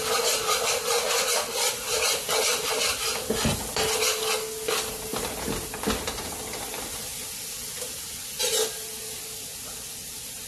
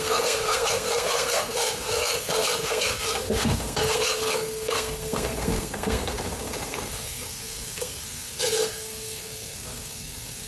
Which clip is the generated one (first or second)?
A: second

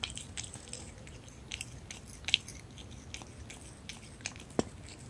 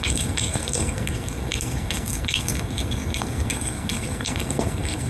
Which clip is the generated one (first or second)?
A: second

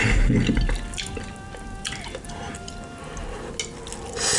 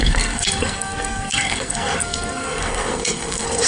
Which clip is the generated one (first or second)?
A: second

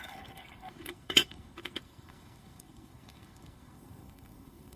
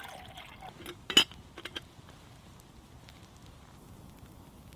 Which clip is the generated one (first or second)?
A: first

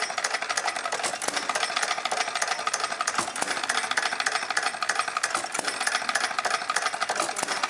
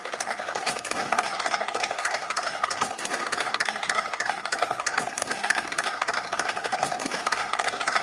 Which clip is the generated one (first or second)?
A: second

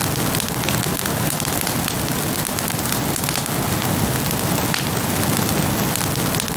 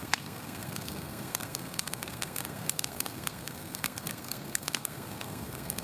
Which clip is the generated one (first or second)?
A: second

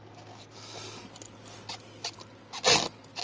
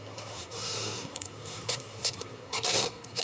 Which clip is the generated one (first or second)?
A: second